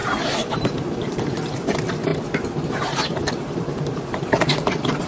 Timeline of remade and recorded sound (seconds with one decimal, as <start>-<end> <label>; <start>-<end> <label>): 0.0-5.1 remade